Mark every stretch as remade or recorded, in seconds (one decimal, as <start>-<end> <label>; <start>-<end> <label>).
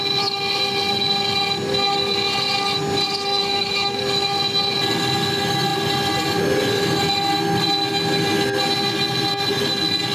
0.0-3.4 recorded; 3.4-4.0 remade; 4.0-10.1 recorded